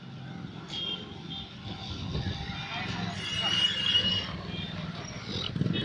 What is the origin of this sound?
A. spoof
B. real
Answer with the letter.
B